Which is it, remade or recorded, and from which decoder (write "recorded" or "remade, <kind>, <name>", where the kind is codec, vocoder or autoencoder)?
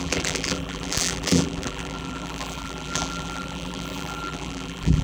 remade, vocoder, BigVGAN v2